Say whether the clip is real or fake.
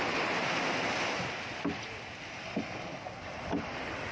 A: real